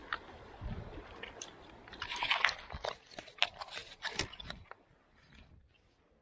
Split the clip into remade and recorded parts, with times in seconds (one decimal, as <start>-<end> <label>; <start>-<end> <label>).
0.0-6.2 recorded